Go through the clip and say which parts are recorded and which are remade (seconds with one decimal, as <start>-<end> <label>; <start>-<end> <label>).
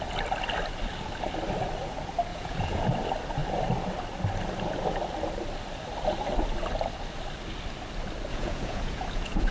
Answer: 0.0-2.3 recorded; 2.3-2.9 remade; 2.9-8.3 recorded; 8.3-9.5 remade